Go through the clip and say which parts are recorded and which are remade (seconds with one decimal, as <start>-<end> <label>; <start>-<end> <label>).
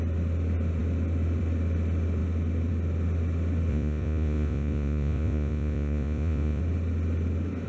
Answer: 0.0-3.7 recorded; 3.7-6.6 remade; 6.6-7.7 recorded